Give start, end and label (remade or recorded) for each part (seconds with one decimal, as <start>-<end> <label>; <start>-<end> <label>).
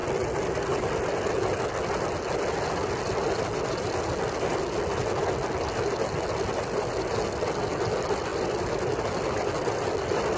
0.0-10.4 recorded